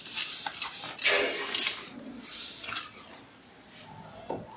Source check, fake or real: real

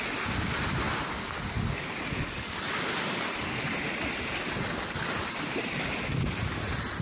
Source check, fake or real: real